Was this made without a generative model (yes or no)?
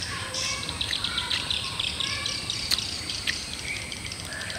no